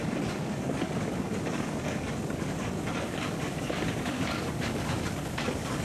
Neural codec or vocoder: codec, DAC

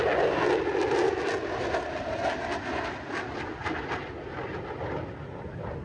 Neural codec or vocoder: none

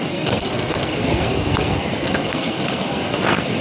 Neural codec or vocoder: codec, SNAC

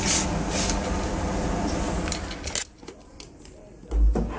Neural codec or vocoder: none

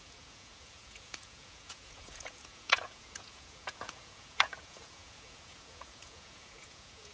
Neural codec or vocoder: vocoder, Vocos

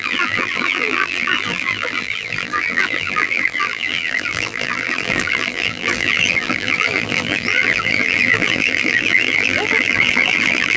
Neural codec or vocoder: vocoder, BigVGAN v2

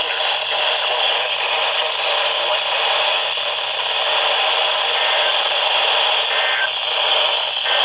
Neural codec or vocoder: none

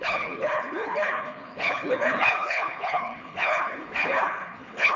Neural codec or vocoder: codec, HILCodec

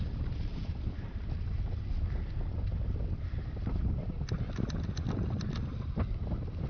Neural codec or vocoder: none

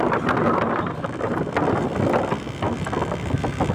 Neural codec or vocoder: none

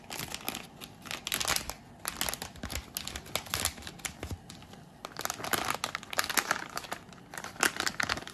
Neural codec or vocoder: none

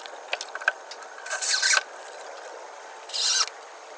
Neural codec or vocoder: none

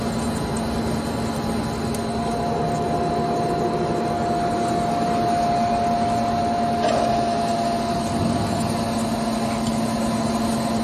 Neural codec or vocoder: none